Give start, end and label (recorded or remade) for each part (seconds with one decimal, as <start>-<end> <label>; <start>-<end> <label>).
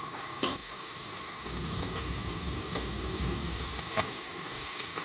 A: 0.0-5.0 remade